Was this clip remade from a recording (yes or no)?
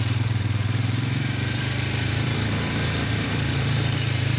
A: yes